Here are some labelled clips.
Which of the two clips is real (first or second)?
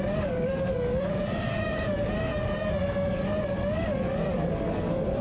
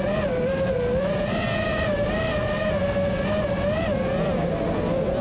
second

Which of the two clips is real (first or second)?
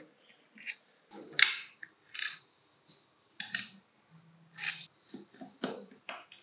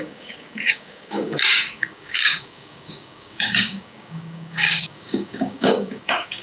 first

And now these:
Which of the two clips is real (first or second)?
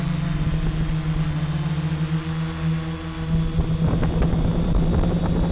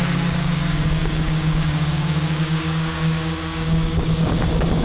first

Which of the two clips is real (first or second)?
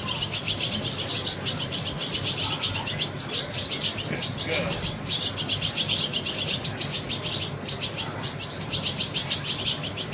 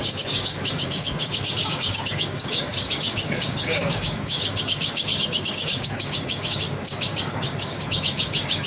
first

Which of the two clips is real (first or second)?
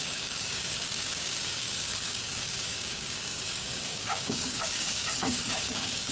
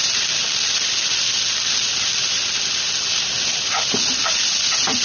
second